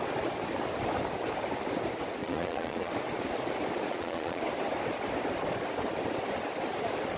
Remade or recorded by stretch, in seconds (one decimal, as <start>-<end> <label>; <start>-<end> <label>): 0.0-2.2 recorded; 2.2-2.9 remade; 2.9-3.9 recorded; 3.9-4.4 remade; 4.4-7.2 recorded